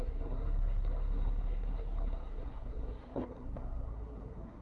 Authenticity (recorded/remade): remade